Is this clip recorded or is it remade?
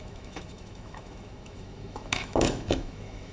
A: remade